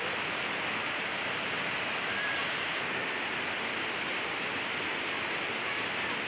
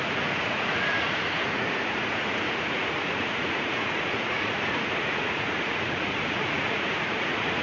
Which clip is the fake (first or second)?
second